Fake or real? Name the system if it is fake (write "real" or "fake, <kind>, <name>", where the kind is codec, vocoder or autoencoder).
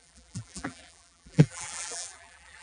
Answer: fake, vocoder, BigVGAN v2